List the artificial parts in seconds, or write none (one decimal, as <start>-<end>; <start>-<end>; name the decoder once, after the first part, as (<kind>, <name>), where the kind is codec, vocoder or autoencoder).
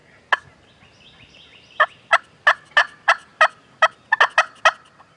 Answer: none